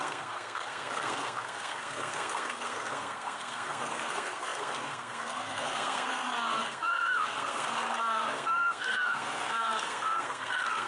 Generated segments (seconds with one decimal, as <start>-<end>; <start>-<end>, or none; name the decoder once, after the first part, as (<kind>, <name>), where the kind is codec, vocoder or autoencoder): 0.0-10.9 (codec, SNAC)